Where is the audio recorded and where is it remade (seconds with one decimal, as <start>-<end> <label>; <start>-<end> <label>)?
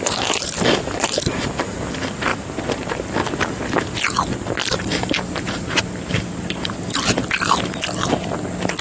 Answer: 0.0-0.4 recorded; 0.4-1.5 remade; 1.5-2.3 recorded; 2.3-3.1 remade; 3.1-4.6 recorded; 4.6-6.8 remade; 6.8-8.8 recorded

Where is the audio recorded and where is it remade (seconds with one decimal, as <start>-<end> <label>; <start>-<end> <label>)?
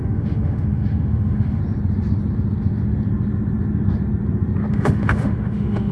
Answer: 0.0-1.6 remade; 1.6-4.7 recorded; 4.7-5.9 remade